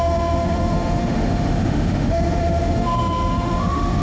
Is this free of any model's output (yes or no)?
no